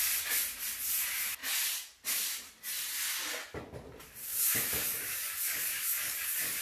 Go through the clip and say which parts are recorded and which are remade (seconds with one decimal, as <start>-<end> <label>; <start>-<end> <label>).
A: 0.0-4.2 recorded; 4.2-6.6 remade